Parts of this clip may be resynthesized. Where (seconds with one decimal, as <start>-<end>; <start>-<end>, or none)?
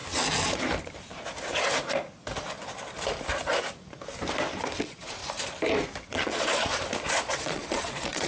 4.8-5.2; 6.1-6.7; 7.2-8.3